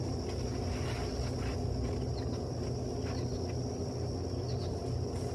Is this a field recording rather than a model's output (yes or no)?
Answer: yes